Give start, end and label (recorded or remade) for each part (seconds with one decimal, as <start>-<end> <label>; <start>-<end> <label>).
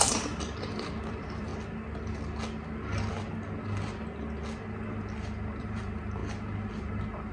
0.0-1.5 remade; 1.5-5.6 recorded; 5.6-6.2 remade; 6.2-7.3 recorded